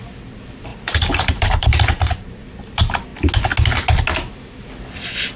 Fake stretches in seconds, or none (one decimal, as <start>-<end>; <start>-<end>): 0.7-2.3